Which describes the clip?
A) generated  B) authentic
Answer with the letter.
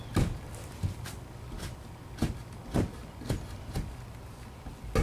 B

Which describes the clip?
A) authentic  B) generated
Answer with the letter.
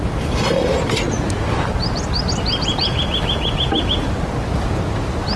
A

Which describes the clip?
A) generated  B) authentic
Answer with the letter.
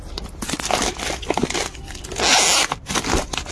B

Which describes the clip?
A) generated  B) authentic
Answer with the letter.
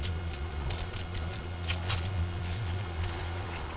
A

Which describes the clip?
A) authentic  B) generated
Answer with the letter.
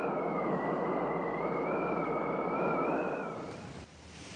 A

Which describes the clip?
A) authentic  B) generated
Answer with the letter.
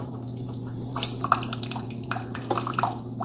B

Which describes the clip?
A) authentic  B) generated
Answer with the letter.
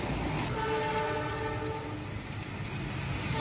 A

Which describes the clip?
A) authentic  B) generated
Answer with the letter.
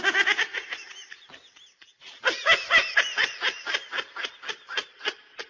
A